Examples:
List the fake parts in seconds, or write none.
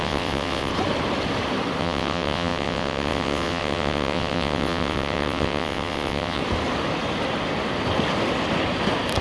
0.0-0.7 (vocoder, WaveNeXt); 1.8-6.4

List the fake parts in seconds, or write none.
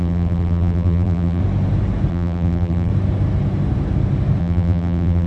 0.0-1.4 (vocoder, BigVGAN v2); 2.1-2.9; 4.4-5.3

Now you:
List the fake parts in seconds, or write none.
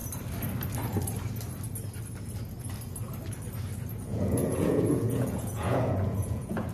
4.0-6.7 (vocoder, Vocos)